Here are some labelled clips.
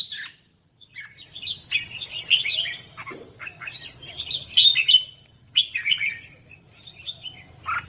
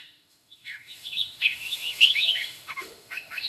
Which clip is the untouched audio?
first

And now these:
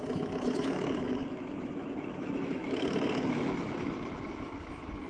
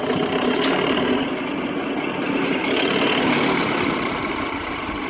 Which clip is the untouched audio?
second